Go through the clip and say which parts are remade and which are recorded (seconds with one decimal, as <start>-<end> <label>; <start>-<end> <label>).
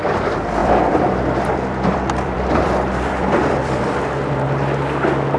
0.0-0.6 recorded; 0.6-3.8 remade; 3.8-5.4 recorded